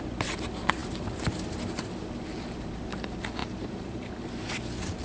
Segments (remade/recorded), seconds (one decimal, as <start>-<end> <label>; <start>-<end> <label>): 0.0-3.4 recorded; 3.4-4.1 remade; 4.1-5.0 recorded